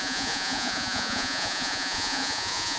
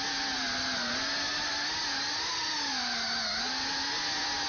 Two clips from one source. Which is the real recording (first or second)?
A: second